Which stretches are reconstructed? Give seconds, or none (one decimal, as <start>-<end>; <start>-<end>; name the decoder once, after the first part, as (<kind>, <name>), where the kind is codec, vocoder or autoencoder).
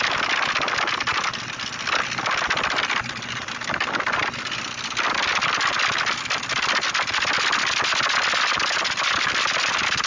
none